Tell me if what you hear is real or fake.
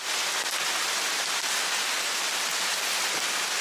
real